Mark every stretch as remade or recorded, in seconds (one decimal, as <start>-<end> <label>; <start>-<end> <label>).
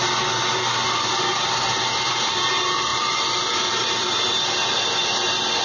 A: 0.0-2.9 recorded; 2.9-4.2 remade; 4.2-5.6 recorded